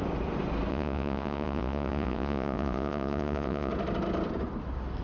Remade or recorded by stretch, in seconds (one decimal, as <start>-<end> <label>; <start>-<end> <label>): 0.0-0.7 recorded; 0.7-3.7 remade; 3.7-5.0 recorded